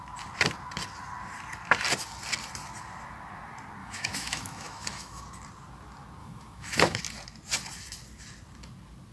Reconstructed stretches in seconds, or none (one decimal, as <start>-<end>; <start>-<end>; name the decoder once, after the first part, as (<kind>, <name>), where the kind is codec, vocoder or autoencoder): 3.8-5.2 (autoencoder, DAC-VAE); 6.2-7.0